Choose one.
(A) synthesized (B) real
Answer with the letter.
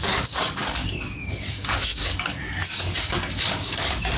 A